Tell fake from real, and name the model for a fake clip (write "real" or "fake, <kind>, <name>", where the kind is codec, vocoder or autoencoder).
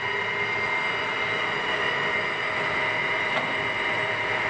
real